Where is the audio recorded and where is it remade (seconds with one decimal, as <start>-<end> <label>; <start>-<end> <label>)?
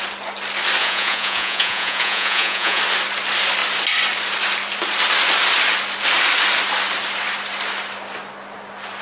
0.0-0.8 recorded; 0.8-2.8 remade; 2.8-9.0 recorded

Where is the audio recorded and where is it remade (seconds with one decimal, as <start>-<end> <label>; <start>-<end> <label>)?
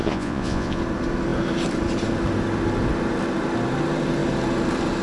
0.0-0.8 remade; 0.8-5.0 recorded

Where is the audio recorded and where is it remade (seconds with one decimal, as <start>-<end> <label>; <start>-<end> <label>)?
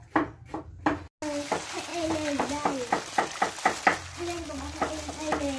0.0-5.6 recorded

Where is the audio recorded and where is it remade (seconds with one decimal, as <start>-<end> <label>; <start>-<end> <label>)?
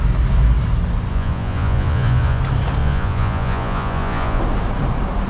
0.0-1.1 recorded; 1.1-2.4 remade; 2.4-2.8 recorded; 2.8-4.4 remade; 4.4-5.3 recorded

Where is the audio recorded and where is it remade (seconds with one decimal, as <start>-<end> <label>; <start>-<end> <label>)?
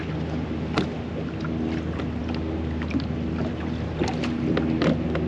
0.0-5.3 recorded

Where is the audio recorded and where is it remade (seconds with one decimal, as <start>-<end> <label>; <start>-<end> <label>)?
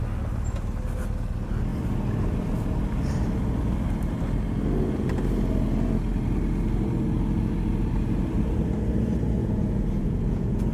0.0-9.4 recorded; 9.4-10.7 remade